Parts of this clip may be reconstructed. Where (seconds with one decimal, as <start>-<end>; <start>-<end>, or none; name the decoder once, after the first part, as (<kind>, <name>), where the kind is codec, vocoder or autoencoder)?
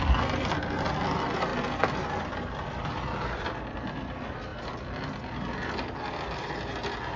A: none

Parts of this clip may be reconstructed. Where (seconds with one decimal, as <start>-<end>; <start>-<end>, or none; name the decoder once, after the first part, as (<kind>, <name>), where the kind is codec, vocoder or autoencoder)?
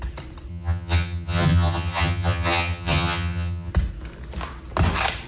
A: 0.5-3.7 (vocoder, HiFi-GAN)